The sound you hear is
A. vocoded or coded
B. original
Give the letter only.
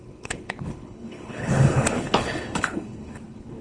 A